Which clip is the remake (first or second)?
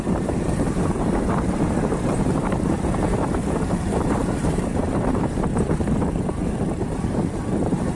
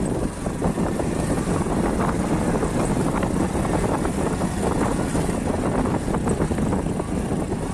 first